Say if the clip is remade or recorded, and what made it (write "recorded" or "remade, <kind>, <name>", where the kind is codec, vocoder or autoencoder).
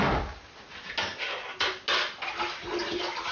recorded